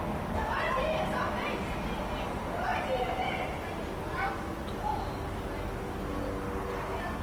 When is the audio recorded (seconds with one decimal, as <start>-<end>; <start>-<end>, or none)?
0.0-7.2